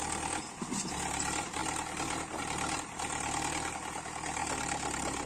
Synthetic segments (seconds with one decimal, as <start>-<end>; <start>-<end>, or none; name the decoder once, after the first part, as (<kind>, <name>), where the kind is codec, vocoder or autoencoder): none

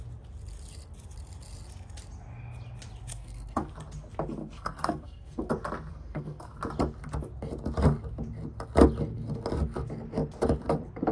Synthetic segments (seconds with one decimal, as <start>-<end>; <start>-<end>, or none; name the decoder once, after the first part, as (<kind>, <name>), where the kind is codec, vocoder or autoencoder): 3.1-3.7 (codec, SNAC); 4.4-5.5; 5.9-6.5